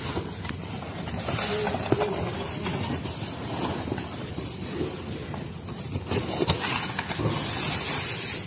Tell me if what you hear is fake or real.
real